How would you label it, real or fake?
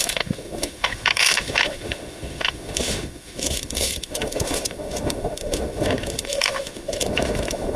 fake